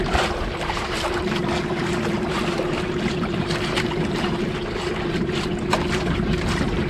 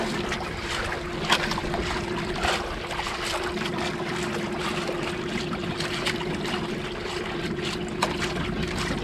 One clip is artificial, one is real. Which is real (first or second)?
second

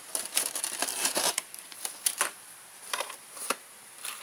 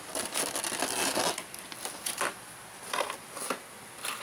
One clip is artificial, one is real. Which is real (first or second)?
second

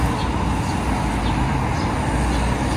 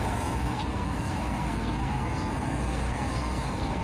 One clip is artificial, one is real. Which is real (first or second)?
first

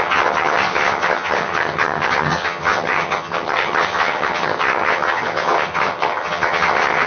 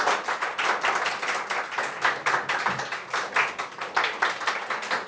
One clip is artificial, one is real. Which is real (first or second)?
second